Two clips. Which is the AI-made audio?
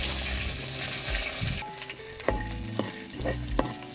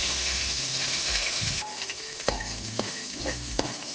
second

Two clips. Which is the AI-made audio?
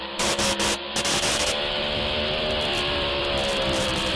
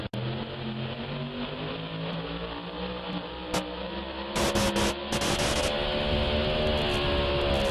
first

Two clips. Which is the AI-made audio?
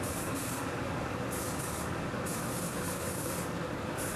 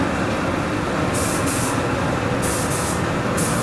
first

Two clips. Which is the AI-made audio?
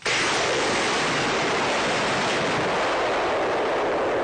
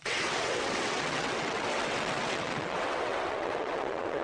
second